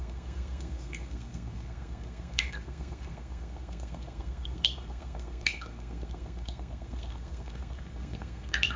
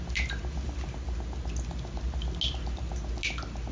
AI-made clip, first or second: first